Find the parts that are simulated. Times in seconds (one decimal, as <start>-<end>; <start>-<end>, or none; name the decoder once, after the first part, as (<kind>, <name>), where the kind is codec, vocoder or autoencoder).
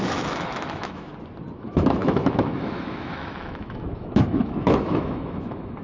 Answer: 0.0-1.1 (autoencoder, DAC-VAE); 1.6-5.8